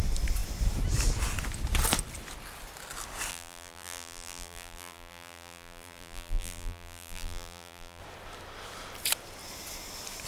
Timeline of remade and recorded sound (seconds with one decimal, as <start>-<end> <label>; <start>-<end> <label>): 0.0-3.3 recorded; 3.3-8.0 remade; 8.0-10.3 recorded